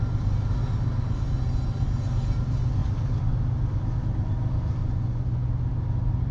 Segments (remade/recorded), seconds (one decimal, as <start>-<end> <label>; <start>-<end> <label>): 0.0-4.8 recorded; 4.8-5.5 remade; 5.5-6.3 recorded